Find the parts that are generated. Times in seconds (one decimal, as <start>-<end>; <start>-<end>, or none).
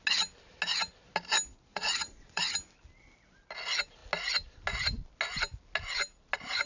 1.7-2.4